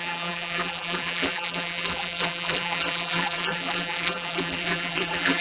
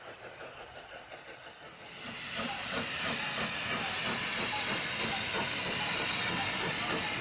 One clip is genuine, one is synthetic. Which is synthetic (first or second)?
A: first